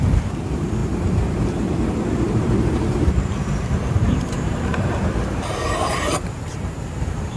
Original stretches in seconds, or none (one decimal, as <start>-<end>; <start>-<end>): none